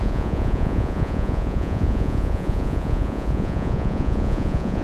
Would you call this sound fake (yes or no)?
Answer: yes